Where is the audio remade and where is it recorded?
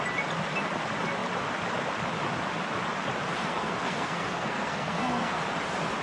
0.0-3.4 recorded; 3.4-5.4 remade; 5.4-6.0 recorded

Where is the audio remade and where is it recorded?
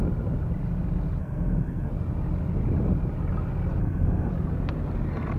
0.0-1.2 recorded; 1.2-1.9 remade; 1.9-3.8 recorded; 3.8-4.3 remade; 4.3-5.4 recorded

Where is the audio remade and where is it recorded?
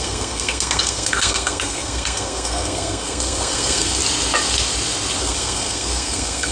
0.0-4.0 remade; 4.0-5.2 recorded; 5.2-6.5 remade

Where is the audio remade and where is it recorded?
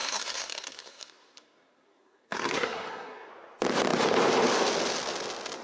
0.0-3.3 remade; 3.3-5.6 recorded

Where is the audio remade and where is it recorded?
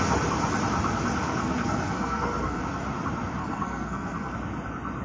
0.0-1.2 recorded; 1.2-2.6 remade; 2.6-3.4 recorded; 3.4-4.3 remade; 4.3-5.0 recorded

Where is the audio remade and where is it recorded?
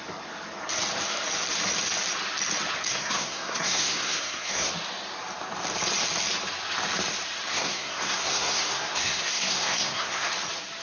0.0-2.9 recorded; 2.9-4.7 remade; 4.7-7.5 recorded; 7.5-10.3 remade; 10.3-10.8 recorded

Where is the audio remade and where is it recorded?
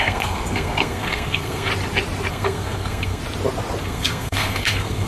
0.0-1.7 remade; 1.7-2.3 recorded; 2.3-3.2 remade; 3.2-3.8 recorded; 3.8-5.1 remade